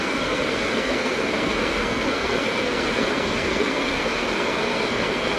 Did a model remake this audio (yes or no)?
yes